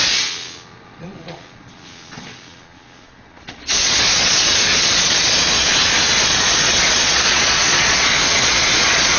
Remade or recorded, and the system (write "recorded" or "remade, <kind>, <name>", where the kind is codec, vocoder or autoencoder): remade, vocoder, Vocos